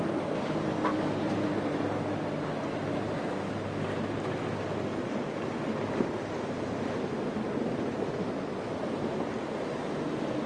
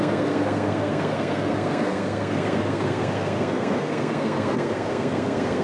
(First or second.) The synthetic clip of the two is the second